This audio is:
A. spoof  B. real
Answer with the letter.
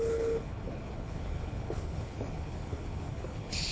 A